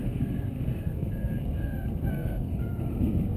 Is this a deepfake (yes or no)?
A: yes